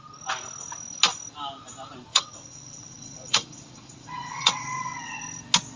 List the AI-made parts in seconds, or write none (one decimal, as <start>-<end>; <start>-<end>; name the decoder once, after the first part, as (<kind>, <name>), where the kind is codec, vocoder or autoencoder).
2.1-5.2 (vocoder, WaveNeXt)